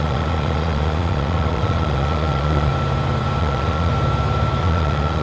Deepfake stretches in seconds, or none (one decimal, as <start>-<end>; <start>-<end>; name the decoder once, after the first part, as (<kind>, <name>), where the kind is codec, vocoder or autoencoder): 0.0-2.7 (vocoder, Vocos); 3.4-3.9; 4.6-5.2